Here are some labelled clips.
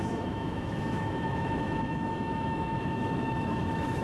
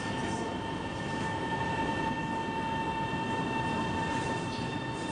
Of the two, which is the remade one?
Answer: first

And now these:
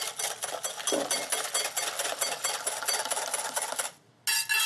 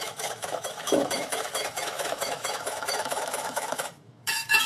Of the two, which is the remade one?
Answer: second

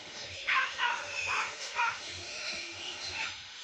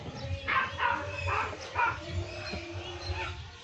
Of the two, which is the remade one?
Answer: first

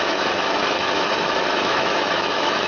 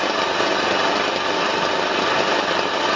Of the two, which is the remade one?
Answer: first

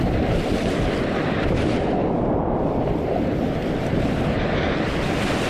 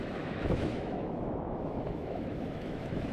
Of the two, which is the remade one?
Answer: second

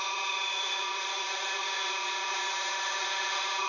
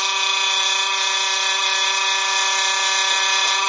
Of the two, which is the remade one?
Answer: first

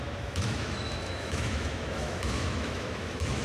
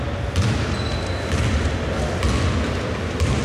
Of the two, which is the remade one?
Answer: first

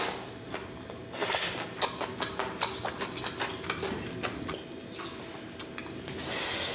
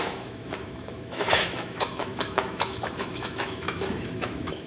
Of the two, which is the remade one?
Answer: second